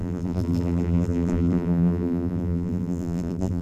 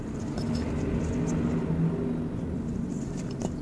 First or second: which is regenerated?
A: first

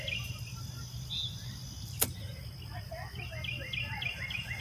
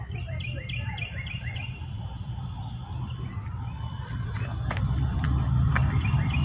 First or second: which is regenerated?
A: second